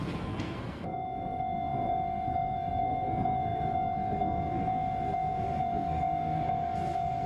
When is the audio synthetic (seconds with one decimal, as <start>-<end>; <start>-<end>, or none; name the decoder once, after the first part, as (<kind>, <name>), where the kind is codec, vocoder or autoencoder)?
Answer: 0.0-7.3 (codec, SNAC)